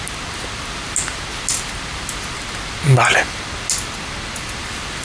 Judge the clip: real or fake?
real